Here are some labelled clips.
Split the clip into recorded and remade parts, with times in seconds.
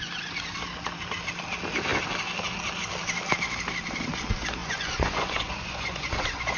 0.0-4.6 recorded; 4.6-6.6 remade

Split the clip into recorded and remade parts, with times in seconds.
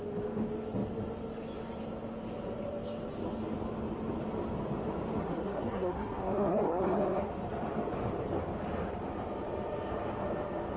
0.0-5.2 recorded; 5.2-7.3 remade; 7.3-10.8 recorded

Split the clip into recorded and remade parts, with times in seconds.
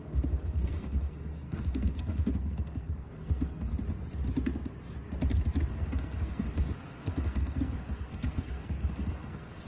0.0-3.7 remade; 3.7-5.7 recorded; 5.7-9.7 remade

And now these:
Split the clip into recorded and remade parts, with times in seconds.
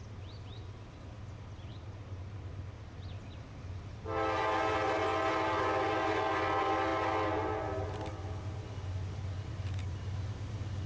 0.0-1.7 recorded; 1.7-2.6 remade; 2.6-10.9 recorded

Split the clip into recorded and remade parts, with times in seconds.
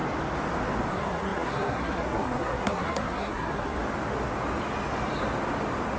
0.0-0.9 recorded; 0.9-3.8 remade; 3.8-6.0 recorded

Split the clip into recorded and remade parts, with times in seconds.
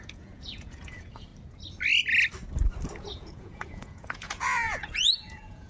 0.0-1.3 remade; 1.3-3.0 recorded; 3.0-5.7 remade